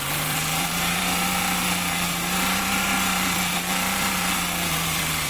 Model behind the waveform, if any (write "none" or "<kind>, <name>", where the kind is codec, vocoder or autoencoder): vocoder, BigVGAN v2